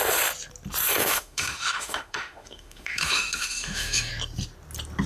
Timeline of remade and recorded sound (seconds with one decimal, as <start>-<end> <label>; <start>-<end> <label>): 0.0-1.0 recorded; 1.0-4.1 remade; 4.1-5.1 recorded